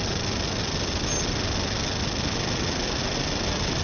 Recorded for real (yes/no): yes